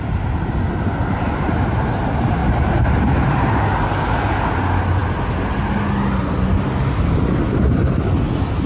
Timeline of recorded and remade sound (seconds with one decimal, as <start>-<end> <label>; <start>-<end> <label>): 0.0-1.0 recorded; 1.0-2.0 remade; 2.0-2.4 recorded; 2.4-3.4 remade; 3.4-8.7 recorded